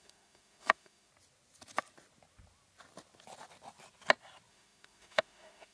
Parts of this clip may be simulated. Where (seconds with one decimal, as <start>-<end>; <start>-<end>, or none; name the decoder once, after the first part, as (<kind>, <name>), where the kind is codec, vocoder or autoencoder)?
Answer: 0.0-1.1 (autoencoder, DAC-VAE); 4.5-5.7